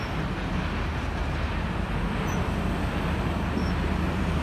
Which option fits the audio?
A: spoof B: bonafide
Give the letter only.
B